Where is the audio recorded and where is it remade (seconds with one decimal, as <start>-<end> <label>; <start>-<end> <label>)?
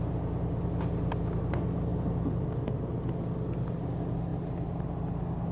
0.0-1.9 recorded; 1.9-2.7 remade; 2.7-4.3 recorded; 4.3-5.1 remade; 5.1-5.5 recorded